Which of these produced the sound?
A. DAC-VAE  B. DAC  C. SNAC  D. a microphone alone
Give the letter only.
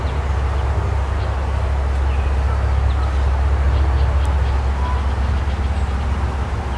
D